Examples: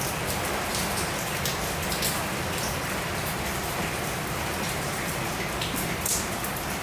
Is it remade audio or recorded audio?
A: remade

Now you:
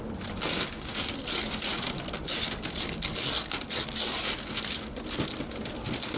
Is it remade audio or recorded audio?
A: recorded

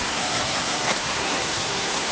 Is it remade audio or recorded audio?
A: remade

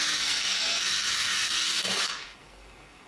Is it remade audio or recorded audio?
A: remade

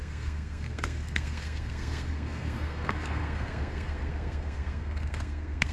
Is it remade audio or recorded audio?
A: remade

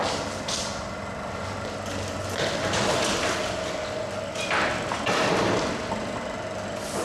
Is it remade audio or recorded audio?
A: recorded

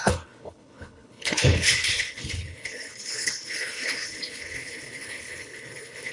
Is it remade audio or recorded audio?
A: remade